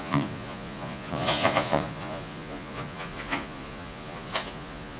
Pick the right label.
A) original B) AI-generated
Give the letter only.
B